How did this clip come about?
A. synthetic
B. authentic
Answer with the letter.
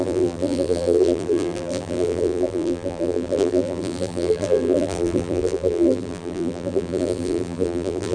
A